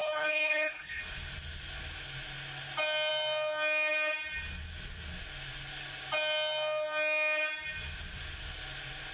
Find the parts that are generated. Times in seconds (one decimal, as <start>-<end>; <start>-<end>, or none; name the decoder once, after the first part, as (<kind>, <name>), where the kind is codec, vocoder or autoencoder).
0.0-1.0 (codec, HILCodec)